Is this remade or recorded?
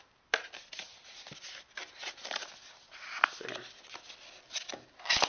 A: recorded